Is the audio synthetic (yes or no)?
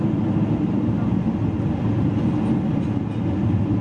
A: yes